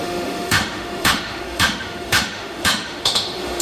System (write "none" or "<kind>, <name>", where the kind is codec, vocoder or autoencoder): autoencoder, DAC-VAE